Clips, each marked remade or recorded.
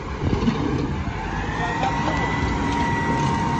recorded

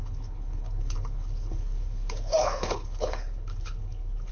remade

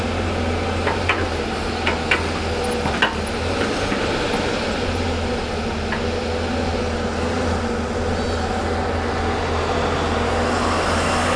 recorded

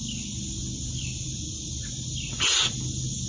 recorded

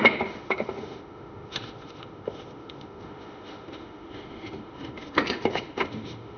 remade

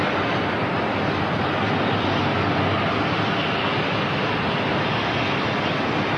recorded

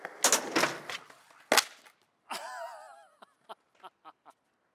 recorded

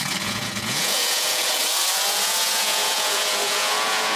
remade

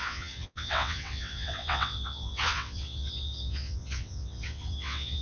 remade